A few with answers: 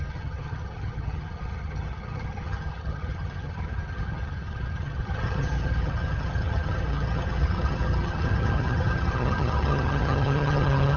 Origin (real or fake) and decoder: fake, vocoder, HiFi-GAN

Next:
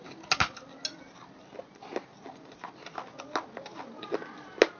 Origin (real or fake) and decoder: real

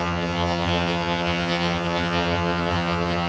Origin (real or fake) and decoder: fake, vocoder, HiFi-GAN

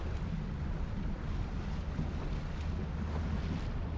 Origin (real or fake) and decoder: real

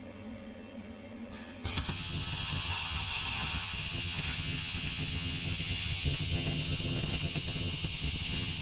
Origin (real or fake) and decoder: fake, vocoder, HiFi-GAN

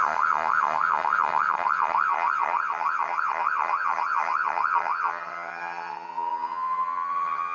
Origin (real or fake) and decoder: fake, vocoder, HiFi-GAN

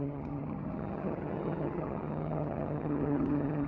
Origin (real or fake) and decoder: fake, vocoder, HiFi-GAN